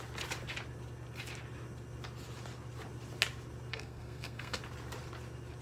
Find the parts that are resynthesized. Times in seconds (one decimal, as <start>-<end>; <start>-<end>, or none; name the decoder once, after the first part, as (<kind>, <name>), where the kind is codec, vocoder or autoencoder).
3.7-4.6 (codec, SNAC)

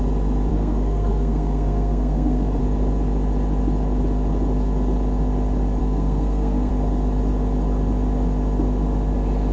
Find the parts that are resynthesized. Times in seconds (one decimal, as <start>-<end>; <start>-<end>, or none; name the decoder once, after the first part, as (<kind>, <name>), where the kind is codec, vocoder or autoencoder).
0.5-2.6 (codec, SNAC); 5.8-6.7